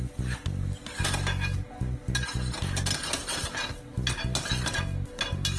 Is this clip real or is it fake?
real